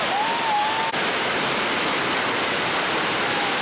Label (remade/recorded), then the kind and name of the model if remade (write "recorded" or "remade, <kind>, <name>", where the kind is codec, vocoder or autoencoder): recorded